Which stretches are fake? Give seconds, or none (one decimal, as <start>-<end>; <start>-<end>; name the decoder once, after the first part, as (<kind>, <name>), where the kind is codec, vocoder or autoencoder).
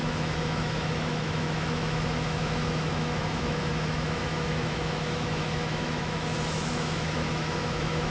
0.0-8.1 (autoencoder, DAC-VAE)